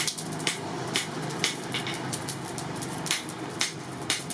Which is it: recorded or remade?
remade